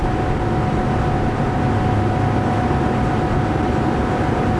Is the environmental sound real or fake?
real